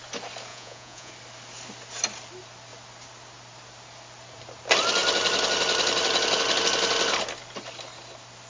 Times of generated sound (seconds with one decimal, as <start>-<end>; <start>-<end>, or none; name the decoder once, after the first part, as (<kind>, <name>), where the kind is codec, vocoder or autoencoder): 0.5-1.1 (vocoder, Vocos)